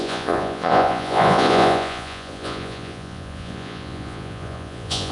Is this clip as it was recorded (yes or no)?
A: no